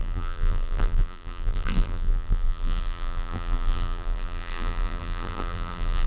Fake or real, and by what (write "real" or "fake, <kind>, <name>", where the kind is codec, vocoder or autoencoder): fake, vocoder, BigVGAN v2